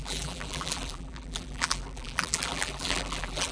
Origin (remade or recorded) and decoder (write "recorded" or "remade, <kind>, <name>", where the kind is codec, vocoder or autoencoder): remade, vocoder, BigVGAN v2